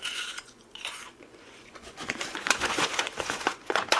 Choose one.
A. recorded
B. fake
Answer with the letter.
B